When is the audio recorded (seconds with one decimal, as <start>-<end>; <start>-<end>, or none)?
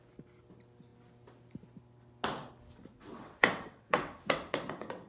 0.0-2.9